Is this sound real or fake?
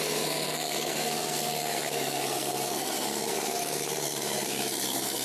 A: fake